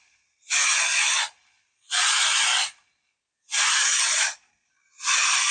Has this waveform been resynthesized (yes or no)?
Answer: no